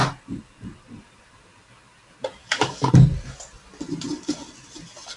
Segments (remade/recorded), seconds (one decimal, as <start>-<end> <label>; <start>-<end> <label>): 0.0-2.4 recorded; 2.4-2.9 remade; 2.9-5.2 recorded